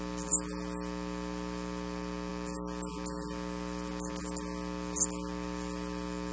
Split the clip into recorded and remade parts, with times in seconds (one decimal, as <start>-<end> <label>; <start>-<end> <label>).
0.0-6.3 recorded